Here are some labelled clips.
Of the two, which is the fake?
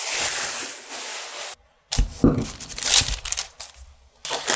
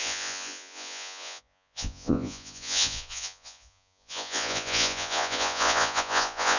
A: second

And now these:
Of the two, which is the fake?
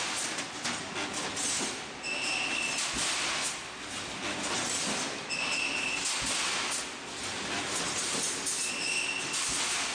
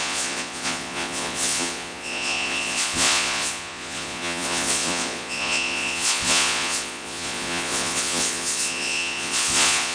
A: second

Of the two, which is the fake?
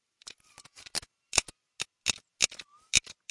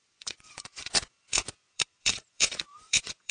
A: second